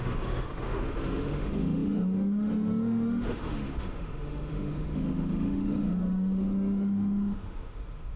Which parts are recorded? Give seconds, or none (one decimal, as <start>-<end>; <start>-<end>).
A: none

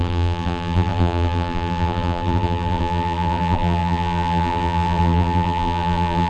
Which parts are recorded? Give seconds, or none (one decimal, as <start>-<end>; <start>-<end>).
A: none